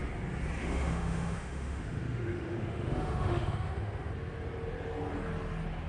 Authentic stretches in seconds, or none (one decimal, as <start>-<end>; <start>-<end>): 0.0-0.6; 4.1-5.9